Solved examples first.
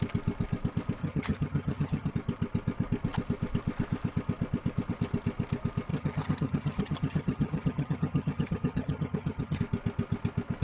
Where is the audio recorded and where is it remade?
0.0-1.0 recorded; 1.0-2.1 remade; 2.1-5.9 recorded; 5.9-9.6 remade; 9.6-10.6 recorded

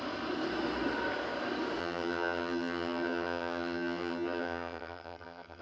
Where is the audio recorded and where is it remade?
0.0-1.8 recorded; 1.8-5.6 remade

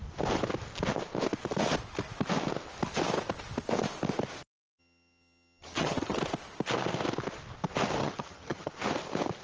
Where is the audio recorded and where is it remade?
0.0-4.8 recorded; 4.8-6.2 remade; 6.2-8.0 recorded; 8.0-8.7 remade; 8.7-9.4 recorded

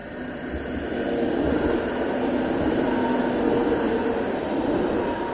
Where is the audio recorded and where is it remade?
0.0-5.3 recorded

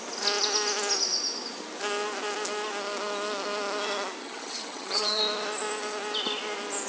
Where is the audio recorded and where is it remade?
0.0-4.2 recorded; 4.2-5.2 remade; 5.2-6.9 recorded